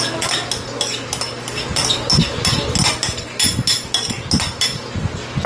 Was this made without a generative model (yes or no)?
yes